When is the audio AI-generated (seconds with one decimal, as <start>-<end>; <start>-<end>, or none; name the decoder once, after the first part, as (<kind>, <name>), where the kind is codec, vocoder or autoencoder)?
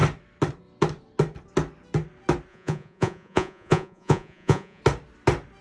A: 2.5-4.8 (vocoder, Vocos)